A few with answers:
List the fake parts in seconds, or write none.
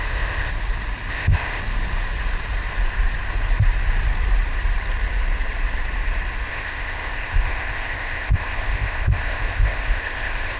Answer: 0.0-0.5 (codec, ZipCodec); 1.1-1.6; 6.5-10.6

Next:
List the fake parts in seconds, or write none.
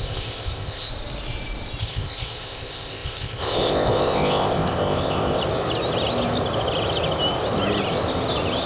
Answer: 0.0-0.9 (codec, ZipCodec); 1.8-5.4